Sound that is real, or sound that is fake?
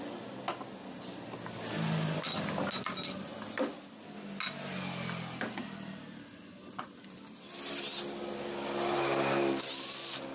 real